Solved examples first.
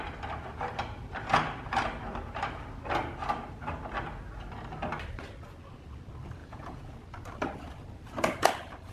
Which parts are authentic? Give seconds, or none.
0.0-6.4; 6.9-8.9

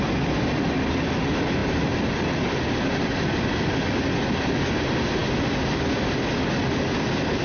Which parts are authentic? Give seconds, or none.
0.0-7.4

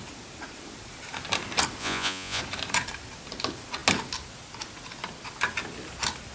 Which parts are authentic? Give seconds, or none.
0.0-1.8; 2.4-6.3

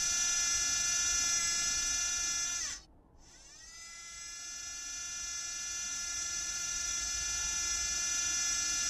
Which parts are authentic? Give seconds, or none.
0.0-5.9; 7.0-8.9

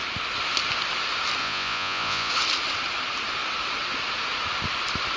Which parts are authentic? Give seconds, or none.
0.0-1.4; 2.3-5.2

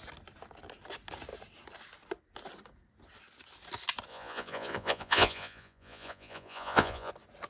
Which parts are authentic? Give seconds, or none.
0.0-4.1; 7.1-7.5

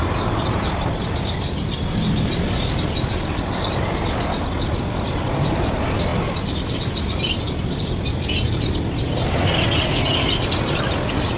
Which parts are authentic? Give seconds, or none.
0.0-11.4